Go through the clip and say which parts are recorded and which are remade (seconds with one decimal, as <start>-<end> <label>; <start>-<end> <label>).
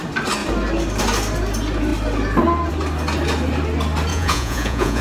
0.0-4.1 recorded; 4.1-5.0 remade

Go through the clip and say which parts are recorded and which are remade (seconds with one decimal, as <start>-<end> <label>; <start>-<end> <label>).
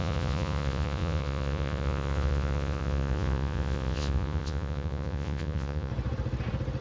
0.0-5.9 remade; 5.9-6.8 recorded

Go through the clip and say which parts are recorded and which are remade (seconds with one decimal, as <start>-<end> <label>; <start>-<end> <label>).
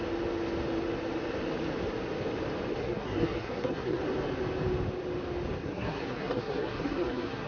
0.0-2.8 recorded; 2.8-4.0 remade; 4.0-5.6 recorded; 5.6-7.5 remade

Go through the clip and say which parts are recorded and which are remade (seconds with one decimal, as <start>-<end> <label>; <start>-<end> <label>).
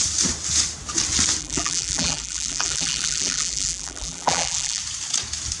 0.0-1.4 recorded; 1.4-4.8 remade; 4.8-5.6 recorded